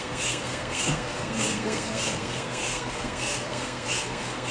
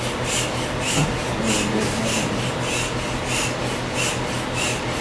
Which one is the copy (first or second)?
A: first